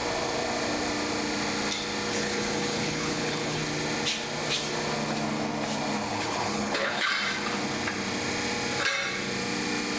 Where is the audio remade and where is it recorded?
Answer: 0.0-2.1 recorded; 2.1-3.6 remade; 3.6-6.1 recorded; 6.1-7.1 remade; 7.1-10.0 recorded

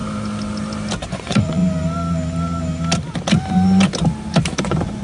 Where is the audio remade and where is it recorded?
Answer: 0.0-1.1 recorded; 1.1-1.6 remade; 1.6-4.6 recorded; 4.6-5.0 remade